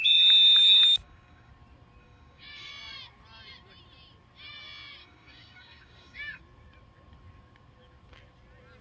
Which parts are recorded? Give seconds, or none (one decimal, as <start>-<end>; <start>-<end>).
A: 0.0-0.6; 1.5-2.0; 2.7-5.0; 6.4-8.8